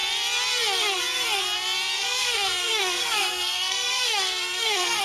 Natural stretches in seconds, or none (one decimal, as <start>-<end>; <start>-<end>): 0.0-1.9